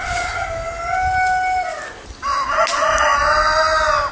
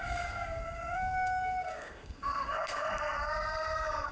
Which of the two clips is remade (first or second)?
second